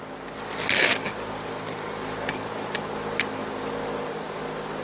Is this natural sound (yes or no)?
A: yes